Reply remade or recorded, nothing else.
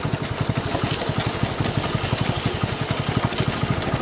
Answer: recorded